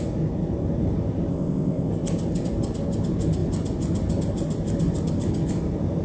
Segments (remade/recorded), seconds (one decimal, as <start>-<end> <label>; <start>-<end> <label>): 0.0-1.3 recorded; 1.3-1.9 remade; 1.9-6.0 recorded